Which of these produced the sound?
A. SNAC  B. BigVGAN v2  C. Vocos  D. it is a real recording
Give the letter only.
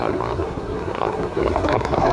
A